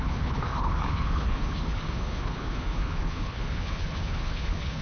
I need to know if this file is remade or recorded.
remade